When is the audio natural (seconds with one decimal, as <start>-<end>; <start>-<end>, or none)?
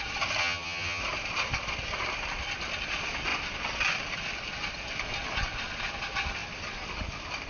0.0-0.4; 1.0-7.5